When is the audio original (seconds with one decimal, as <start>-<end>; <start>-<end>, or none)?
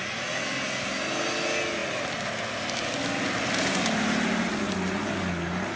0.0-5.8